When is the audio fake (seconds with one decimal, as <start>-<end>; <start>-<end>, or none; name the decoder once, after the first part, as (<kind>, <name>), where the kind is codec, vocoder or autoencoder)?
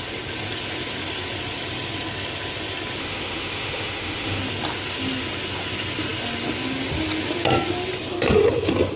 3.0-4.4 (autoencoder, DAC-VAE)